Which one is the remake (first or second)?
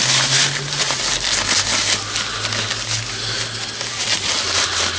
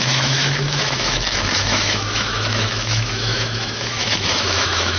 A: second